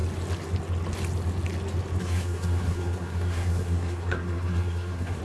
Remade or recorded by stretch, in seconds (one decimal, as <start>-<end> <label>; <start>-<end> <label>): 0.0-2.0 recorded; 2.0-5.2 remade